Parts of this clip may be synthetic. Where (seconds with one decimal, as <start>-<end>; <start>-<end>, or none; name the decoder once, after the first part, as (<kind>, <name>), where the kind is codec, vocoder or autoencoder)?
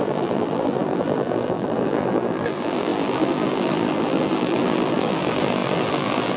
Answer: 0.0-6.4 (vocoder, BigVGAN v2)